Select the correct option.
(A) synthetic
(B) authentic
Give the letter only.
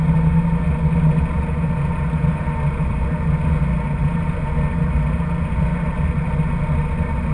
B